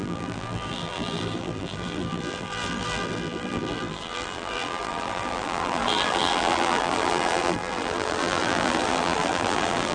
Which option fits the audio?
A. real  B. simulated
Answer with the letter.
B